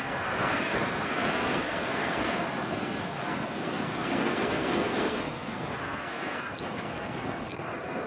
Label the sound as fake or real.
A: fake